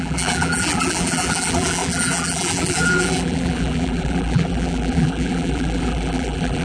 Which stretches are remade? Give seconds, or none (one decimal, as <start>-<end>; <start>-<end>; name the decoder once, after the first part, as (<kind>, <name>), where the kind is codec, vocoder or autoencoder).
0.0-6.6 (vocoder, BigVGAN v2)